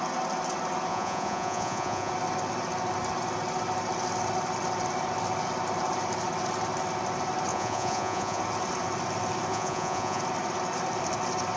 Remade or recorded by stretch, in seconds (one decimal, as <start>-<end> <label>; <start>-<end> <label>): 0.0-0.9 recorded; 0.9-2.1 remade; 2.1-7.5 recorded; 7.5-8.4 remade; 8.4-9.5 recorded; 9.5-10.2 remade; 10.2-11.6 recorded